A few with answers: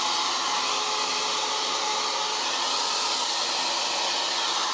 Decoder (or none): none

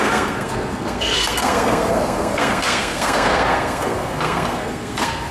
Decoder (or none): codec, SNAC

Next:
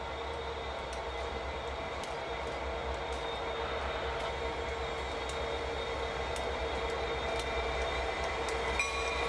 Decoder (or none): none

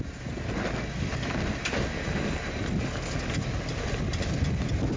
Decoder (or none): none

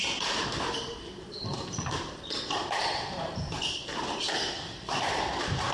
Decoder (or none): vocoder, BigVGAN v2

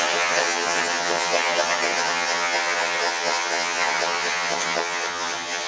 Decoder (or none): vocoder, HiFi-GAN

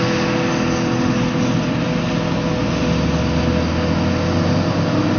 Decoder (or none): none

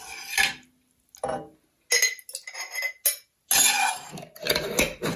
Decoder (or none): none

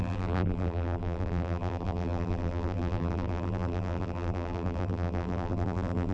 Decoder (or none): vocoder, BigVGAN v2